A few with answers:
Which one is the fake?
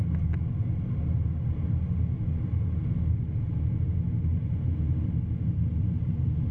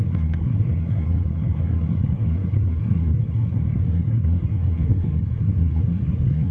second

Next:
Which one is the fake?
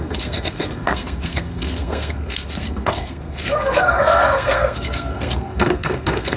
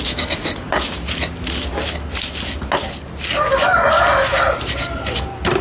first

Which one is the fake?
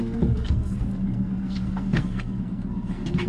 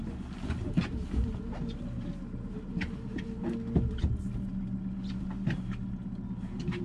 first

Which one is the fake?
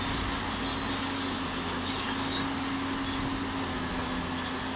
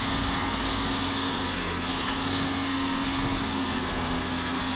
second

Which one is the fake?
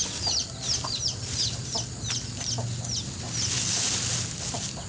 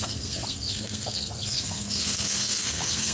second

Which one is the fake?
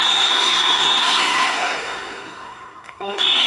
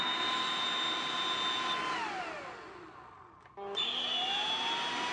first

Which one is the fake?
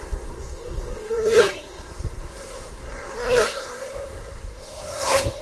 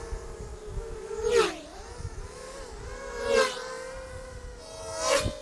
first